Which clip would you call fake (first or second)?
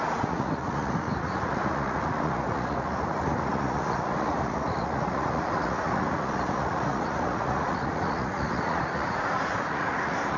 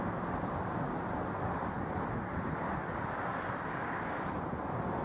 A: first